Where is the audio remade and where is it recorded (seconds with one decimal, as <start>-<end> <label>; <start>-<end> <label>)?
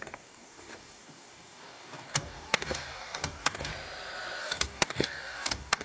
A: 0.0-3.7 remade; 3.7-4.4 recorded; 4.4-5.8 remade